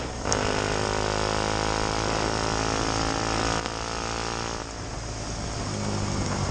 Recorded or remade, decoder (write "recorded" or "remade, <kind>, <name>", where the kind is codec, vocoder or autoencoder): recorded